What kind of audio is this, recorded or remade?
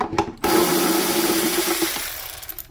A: remade